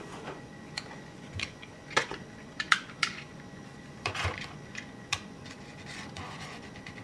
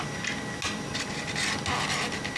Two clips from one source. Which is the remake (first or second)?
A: first